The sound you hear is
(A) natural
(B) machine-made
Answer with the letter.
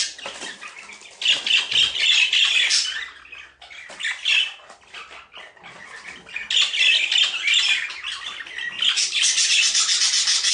A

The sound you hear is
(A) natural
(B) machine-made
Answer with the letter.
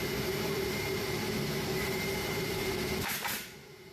B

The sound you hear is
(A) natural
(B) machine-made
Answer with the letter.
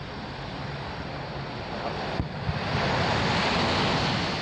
A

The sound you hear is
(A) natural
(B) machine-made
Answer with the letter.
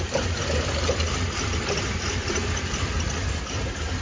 B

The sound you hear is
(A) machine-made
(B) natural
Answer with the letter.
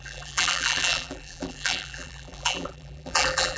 A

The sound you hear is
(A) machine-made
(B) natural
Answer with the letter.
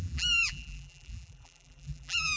A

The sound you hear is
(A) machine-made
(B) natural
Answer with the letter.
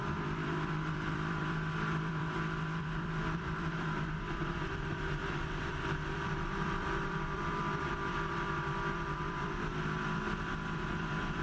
A